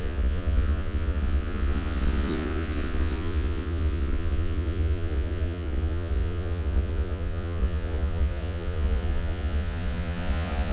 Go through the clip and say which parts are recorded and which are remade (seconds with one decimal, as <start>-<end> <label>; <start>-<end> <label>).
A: 0.0-10.7 remade